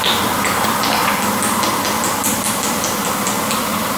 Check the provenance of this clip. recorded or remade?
remade